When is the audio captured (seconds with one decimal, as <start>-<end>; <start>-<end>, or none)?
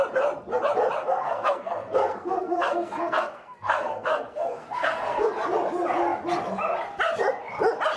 0.0-1.0; 5.3-8.0